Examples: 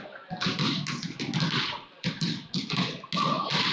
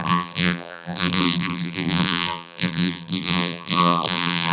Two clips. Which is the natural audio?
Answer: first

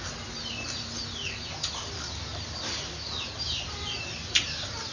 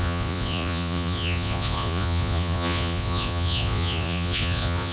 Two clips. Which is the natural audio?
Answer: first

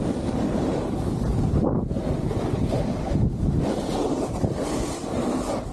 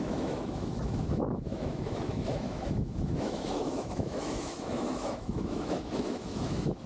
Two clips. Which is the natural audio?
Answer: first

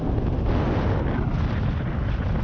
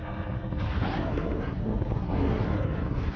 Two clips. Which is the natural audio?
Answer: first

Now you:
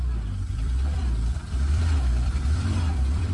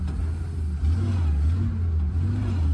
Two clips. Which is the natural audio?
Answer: second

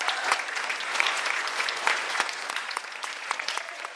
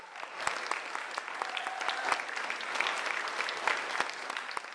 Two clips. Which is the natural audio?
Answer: second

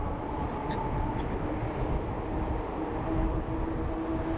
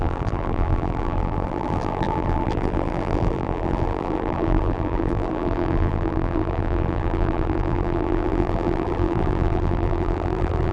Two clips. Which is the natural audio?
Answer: first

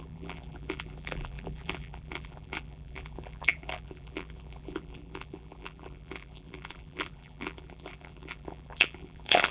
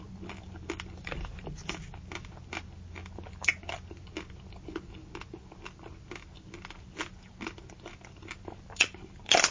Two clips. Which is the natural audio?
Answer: second